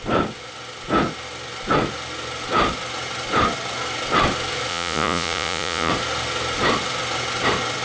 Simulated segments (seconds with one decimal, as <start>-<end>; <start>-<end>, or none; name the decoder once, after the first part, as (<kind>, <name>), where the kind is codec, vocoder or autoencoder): 4.7-5.9 (vocoder, Vocos)